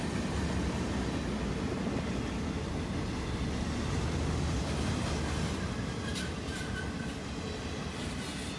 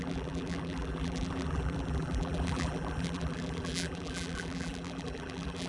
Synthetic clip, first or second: second